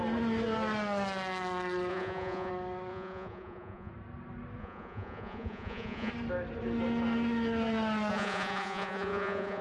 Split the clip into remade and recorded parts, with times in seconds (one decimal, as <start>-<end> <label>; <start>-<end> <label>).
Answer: 0.0-1.9 recorded; 1.9-2.5 remade; 2.5-2.9 recorded; 2.9-3.9 remade; 3.9-4.6 recorded; 4.6-6.1 remade; 6.1-8.1 recorded; 8.1-9.6 remade